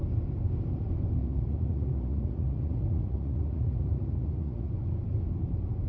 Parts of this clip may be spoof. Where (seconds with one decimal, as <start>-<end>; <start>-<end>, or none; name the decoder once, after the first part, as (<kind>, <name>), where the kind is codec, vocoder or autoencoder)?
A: 1.2-4.7 (vocoder, Vocos)